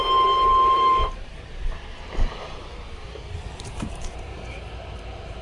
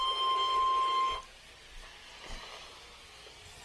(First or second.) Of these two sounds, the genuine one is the second